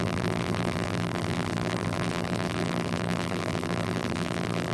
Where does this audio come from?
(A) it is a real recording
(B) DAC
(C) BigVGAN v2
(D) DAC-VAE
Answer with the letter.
C